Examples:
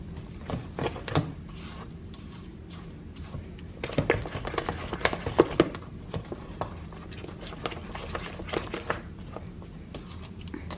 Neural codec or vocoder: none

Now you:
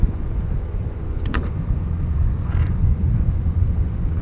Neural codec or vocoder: vocoder, Vocos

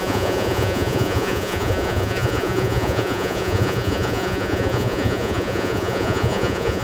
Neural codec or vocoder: vocoder, Vocos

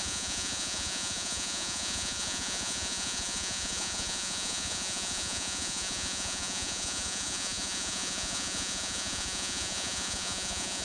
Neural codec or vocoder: vocoder, Vocos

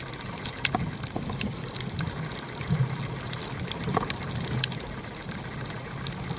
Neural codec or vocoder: none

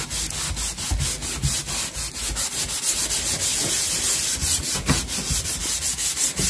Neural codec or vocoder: none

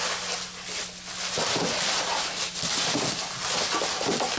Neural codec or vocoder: none